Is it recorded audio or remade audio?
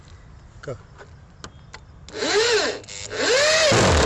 recorded